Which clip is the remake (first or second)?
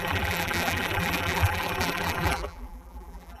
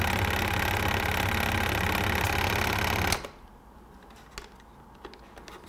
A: first